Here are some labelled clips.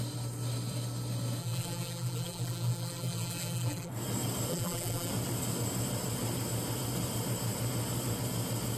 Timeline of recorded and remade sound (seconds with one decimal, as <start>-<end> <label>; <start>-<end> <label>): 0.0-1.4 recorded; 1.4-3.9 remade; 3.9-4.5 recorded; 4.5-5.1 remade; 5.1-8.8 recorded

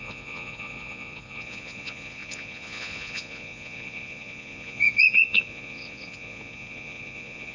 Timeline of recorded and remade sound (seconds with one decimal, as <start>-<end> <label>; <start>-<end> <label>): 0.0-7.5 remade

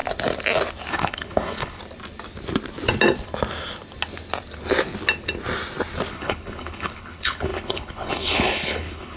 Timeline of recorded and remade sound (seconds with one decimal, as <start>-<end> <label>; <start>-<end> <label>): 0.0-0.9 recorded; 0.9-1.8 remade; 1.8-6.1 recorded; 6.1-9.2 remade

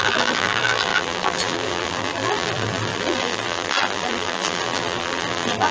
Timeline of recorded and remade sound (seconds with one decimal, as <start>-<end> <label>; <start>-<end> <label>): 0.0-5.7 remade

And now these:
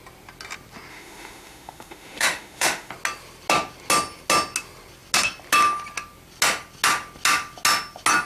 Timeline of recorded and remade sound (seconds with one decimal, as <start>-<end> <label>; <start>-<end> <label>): 0.0-0.9 recorded; 0.9-2.9 remade; 2.9-8.3 recorded

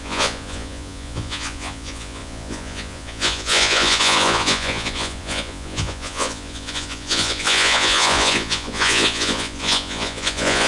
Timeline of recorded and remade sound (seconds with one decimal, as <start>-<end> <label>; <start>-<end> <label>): 0.0-10.7 remade

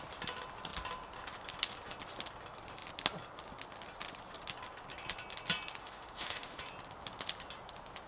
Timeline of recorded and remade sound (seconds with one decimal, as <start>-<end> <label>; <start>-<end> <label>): 0.0-5.8 recorded; 5.8-6.6 remade; 6.6-8.1 recorded

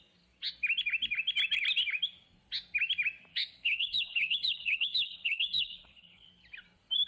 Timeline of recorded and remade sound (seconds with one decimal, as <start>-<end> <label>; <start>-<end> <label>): 0.0-3.3 recorded; 3.3-6.3 remade; 6.3-7.1 recorded